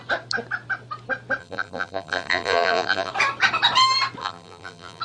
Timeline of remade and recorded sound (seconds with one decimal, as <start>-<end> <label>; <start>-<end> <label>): 0.0-1.4 recorded; 1.4-3.1 remade; 3.1-4.2 recorded; 4.2-5.0 remade

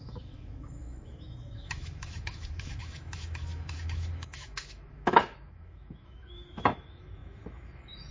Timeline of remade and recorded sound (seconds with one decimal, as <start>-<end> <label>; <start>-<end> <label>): 0.0-8.1 remade

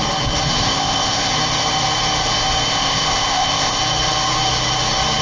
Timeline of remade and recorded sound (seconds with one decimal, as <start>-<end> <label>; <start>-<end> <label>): 0.0-0.6 recorded; 0.6-1.3 remade; 1.3-2.7 recorded; 2.7-3.8 remade; 3.8-5.2 recorded

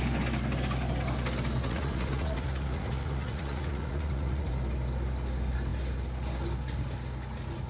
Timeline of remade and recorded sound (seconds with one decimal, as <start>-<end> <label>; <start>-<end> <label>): 0.0-1.6 recorded; 1.6-4.5 remade; 4.5-7.7 recorded

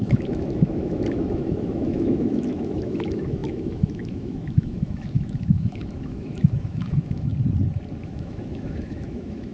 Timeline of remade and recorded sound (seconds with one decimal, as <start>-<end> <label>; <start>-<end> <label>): 0.0-7.3 remade; 7.3-8.0 recorded; 8.0-9.5 remade

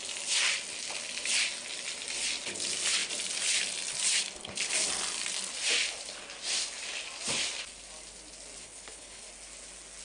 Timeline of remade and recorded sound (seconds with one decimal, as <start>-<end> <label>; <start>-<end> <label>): 0.0-8.6 recorded; 8.6-9.3 remade; 9.3-10.0 recorded